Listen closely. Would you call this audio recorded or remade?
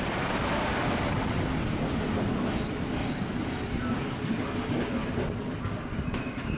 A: recorded